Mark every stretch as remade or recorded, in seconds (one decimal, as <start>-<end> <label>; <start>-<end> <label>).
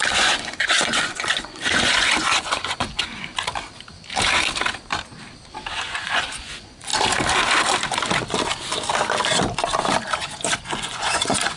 0.0-3.3 remade; 3.3-5.7 recorded; 5.7-6.9 remade; 6.9-10.2 recorded; 10.2-11.6 remade